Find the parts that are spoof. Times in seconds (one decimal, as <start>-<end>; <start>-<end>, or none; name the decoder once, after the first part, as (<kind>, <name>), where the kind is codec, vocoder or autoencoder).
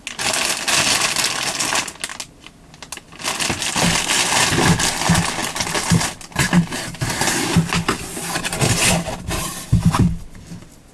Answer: none